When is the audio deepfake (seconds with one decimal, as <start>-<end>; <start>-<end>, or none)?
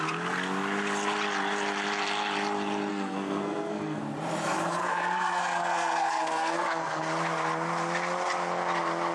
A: 2.9-4.0; 4.8-7.1